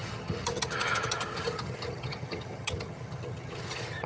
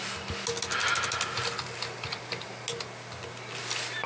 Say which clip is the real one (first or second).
second